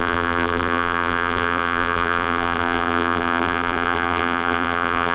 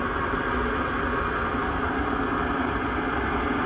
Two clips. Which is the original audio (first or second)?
second